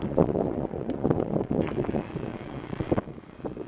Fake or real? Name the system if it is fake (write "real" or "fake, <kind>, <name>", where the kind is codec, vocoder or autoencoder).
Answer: fake, vocoder, Vocos